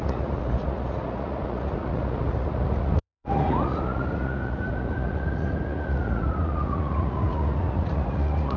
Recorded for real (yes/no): no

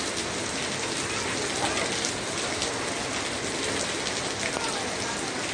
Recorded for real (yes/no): yes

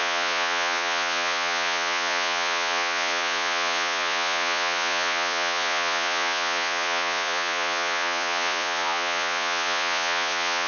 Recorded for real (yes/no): no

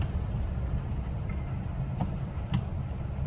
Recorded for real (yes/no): yes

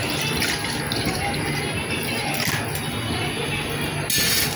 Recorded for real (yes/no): yes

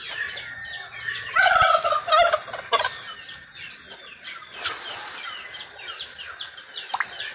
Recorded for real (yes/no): yes